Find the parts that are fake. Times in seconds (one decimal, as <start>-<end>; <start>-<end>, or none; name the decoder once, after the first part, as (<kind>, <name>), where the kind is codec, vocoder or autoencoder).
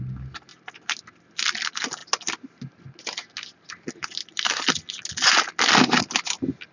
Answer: none